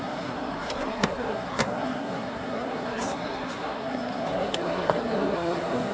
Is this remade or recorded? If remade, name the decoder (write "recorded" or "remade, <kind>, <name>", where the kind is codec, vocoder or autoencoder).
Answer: remade, codec, SNAC